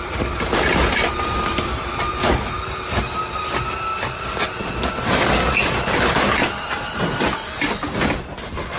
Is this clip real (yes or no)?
yes